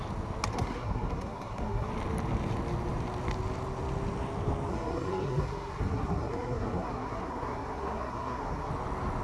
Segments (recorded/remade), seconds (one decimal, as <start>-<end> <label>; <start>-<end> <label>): 0.0-0.5 recorded; 0.5-1.9 remade; 1.9-4.7 recorded; 4.7-8.7 remade; 8.7-9.2 recorded